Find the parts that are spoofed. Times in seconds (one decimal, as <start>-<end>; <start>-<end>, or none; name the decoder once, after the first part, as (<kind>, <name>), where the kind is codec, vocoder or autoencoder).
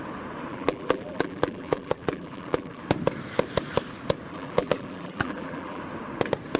0.5-2.8 (vocoder, BigVGAN v2); 4.3-5.8